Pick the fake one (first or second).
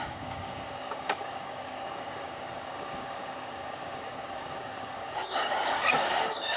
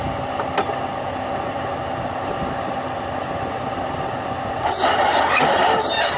first